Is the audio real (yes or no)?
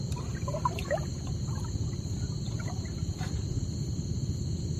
yes